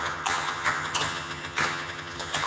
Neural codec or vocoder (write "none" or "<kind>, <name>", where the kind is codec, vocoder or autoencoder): vocoder, HiFi-GAN